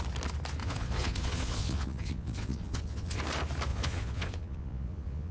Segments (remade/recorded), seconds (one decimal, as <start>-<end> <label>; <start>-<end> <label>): 0.0-0.6 recorded; 0.6-3.2 remade; 3.2-3.7 recorded; 3.7-5.3 remade